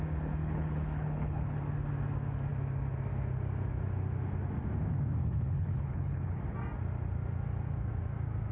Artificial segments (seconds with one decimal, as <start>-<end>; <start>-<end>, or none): 0.4-1.6; 5.2-6.4